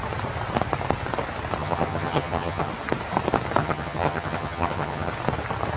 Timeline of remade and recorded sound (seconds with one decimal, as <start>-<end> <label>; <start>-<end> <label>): 0.0-1.6 recorded; 1.6-2.7 remade; 2.7-3.6 recorded; 3.6-5.1 remade; 5.1-5.8 recorded